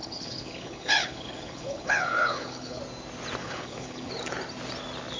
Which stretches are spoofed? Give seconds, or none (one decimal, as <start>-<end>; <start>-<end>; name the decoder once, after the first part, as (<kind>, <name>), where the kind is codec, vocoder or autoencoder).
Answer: 0.0-2.8 (codec, HILCodec); 3.4-4.1